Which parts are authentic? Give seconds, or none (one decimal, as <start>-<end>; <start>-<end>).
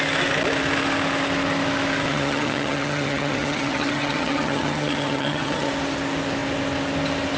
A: 0.0-2.1; 5.7-7.4